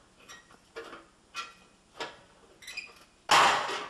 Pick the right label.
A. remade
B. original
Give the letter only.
B